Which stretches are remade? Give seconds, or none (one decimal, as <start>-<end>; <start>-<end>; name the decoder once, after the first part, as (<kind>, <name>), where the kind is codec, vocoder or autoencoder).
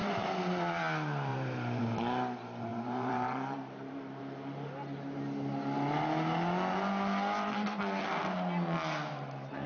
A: 0.0-0.8 (vocoder, BigVGAN v2); 1.3-1.8; 2.7-4.2